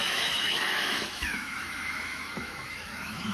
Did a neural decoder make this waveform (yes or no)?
yes